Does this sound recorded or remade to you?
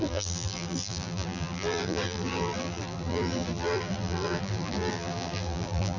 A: remade